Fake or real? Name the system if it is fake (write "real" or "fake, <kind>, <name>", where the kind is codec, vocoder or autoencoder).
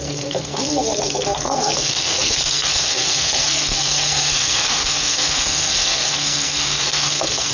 fake, codec, SNAC